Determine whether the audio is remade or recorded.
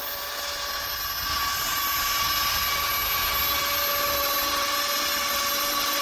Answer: recorded